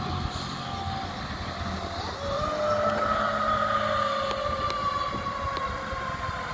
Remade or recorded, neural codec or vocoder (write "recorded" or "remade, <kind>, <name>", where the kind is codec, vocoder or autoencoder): recorded